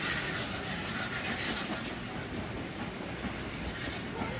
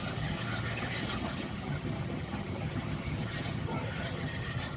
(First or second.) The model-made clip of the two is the second